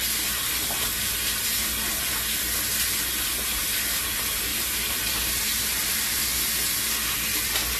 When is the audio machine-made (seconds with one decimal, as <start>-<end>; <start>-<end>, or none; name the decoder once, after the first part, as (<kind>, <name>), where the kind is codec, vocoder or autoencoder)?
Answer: 4.5-5.9 (vocoder, BigVGAN v2)